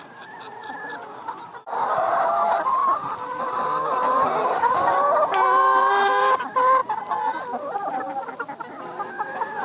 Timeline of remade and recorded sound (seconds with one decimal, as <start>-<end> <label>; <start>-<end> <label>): 0.0-0.6 remade; 0.6-2.1 recorded; 2.1-2.8 remade; 2.8-3.4 recorded; 3.4-6.8 remade; 6.8-8.8 recorded; 8.8-9.6 remade